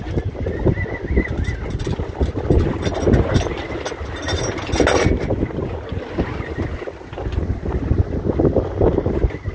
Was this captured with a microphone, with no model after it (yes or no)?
yes